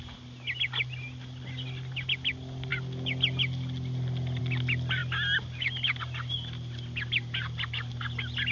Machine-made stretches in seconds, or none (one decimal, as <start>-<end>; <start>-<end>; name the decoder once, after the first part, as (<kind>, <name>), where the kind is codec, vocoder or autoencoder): none